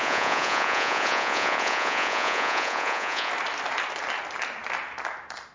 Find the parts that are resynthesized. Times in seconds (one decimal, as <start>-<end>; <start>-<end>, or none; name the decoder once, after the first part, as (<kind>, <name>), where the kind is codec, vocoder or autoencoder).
0.0-3.3 (vocoder, Vocos)